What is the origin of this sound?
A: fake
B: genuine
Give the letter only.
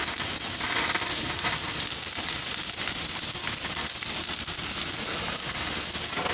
B